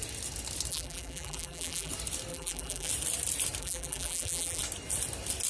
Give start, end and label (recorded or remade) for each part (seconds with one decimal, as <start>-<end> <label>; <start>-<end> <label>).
0.0-0.7 recorded; 0.7-1.9 remade; 1.9-2.3 recorded; 2.3-2.9 remade; 2.9-3.6 recorded; 3.6-4.6 remade; 4.6-5.5 recorded